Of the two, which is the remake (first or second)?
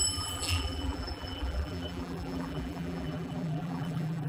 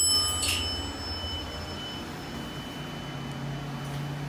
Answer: first